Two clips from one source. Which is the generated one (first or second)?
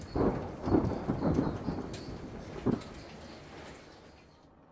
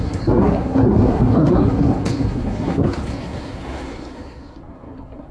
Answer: second